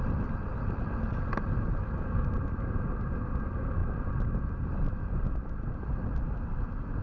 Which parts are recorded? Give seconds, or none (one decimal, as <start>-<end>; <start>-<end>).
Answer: 0.0-7.0